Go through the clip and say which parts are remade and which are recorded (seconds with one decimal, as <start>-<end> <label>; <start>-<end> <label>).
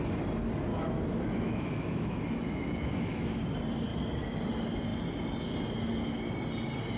0.0-0.7 recorded; 0.7-3.4 remade; 3.4-7.0 recorded